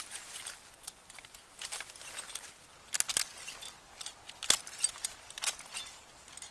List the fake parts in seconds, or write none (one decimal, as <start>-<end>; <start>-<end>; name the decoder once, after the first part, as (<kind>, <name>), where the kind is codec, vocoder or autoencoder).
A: none